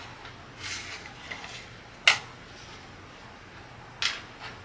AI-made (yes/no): no